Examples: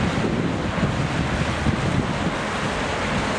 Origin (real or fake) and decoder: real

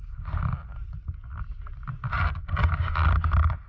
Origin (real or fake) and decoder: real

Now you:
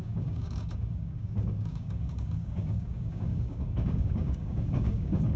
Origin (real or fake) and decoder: fake, codec, DAC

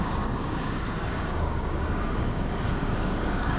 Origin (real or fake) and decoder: fake, codec, DAC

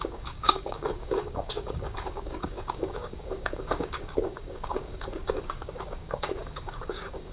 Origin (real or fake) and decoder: fake, codec, DAC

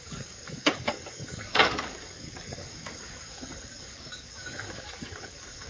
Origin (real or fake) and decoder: fake, codec, DAC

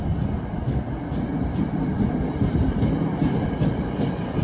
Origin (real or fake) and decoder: real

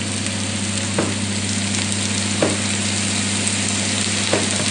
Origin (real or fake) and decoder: real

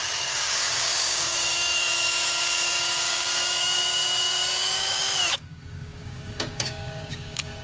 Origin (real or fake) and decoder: fake, codec, DAC